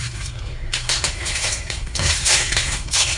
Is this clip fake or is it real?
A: fake